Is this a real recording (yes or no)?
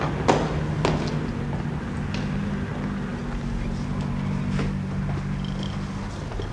yes